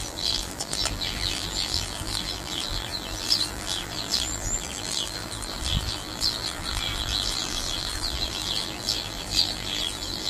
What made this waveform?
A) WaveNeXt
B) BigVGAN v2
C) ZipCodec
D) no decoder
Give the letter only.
B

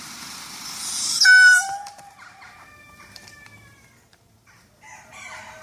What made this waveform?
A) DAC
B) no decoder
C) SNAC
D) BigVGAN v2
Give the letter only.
D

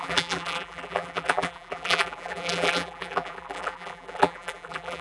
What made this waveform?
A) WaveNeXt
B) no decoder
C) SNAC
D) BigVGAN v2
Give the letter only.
D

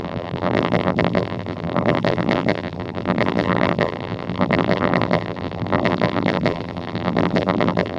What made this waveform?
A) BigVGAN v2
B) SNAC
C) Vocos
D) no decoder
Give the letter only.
A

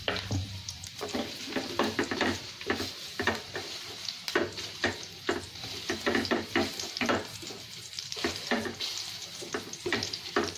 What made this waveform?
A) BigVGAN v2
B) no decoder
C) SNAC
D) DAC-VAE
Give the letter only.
A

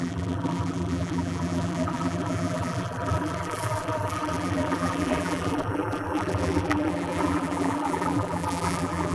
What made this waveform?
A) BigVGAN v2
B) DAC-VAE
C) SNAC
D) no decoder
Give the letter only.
A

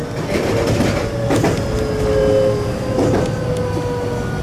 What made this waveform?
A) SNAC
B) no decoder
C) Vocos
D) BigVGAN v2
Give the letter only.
B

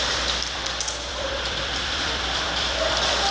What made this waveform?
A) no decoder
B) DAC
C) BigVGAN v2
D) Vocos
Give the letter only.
C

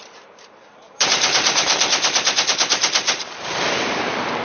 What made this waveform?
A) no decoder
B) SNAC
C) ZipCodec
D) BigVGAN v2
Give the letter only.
D